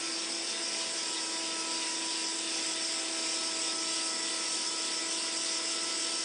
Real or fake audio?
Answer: real